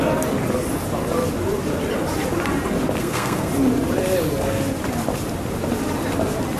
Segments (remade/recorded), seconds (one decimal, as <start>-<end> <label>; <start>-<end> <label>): 0.0-3.0 recorded; 3.0-3.5 remade; 3.5-6.6 recorded